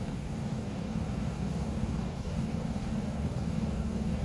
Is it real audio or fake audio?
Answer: fake